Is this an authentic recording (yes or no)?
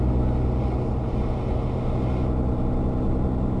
yes